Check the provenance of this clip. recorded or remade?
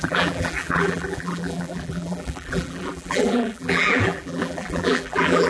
remade